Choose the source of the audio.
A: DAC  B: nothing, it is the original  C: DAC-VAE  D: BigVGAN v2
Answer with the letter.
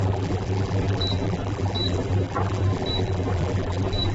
D